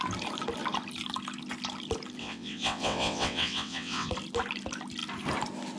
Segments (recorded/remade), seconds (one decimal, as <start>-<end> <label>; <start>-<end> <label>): 0.0-2.2 recorded; 2.2-4.1 remade; 4.1-5.8 recorded